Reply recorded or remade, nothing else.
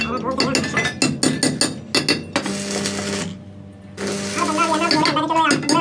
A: recorded